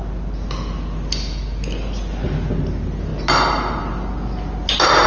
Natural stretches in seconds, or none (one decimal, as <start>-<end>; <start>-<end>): 0.0-5.1